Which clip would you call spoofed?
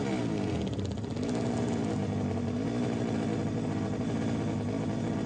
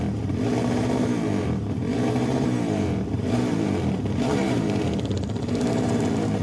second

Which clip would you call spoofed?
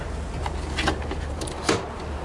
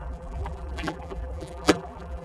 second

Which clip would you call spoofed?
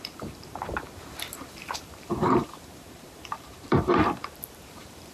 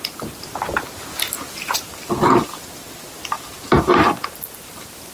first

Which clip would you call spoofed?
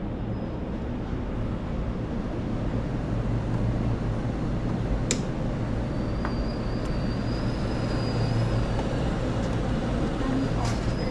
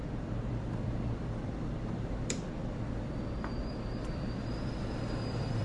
second